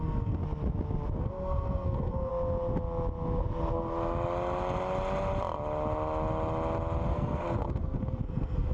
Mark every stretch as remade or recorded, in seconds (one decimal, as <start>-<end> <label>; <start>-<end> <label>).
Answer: 0.0-0.4 remade; 0.4-1.2 recorded; 1.2-2.3 remade; 2.3-7.1 recorded; 7.1-8.7 remade